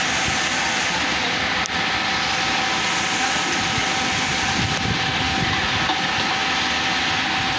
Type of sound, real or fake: real